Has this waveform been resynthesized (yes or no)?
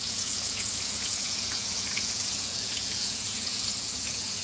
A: yes